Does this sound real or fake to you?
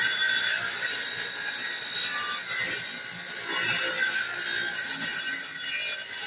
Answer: real